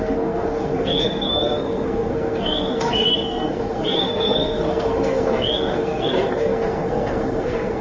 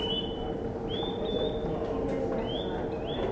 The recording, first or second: second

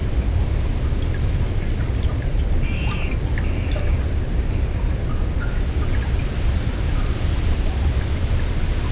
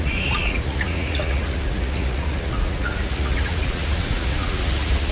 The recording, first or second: first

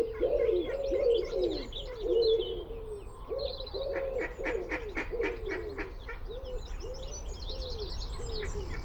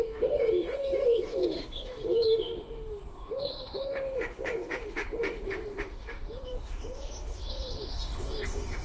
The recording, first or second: first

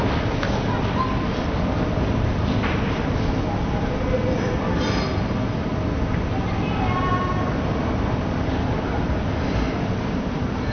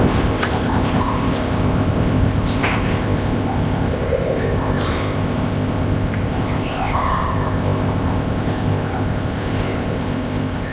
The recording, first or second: first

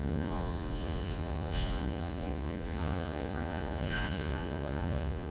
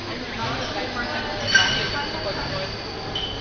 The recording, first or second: second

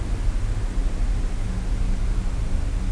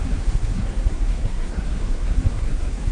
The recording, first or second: first